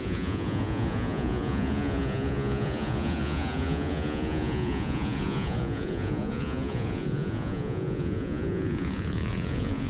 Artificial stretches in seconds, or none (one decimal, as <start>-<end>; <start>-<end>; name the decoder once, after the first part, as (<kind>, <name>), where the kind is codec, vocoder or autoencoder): 0.0-9.9 (vocoder, Vocos)